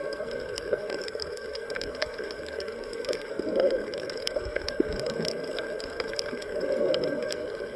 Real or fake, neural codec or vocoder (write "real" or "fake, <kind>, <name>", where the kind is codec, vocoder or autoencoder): fake, codec, SNAC